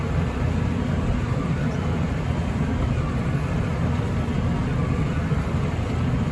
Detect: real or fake fake